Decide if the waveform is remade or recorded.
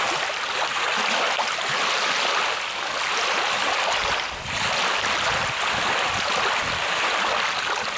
recorded